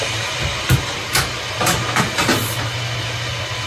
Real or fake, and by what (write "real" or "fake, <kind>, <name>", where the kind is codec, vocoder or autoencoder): real